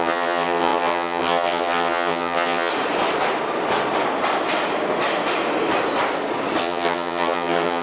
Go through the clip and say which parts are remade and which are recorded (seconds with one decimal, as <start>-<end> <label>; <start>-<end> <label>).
0.0-2.7 remade; 2.7-6.6 recorded; 6.6-7.8 remade